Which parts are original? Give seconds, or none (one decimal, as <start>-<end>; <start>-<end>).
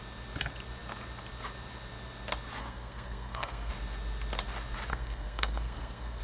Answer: 0.0-2.6; 3.7-4.9